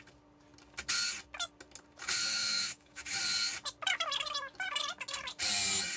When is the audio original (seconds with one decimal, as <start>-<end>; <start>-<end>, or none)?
0.0-2.2; 3.2-6.0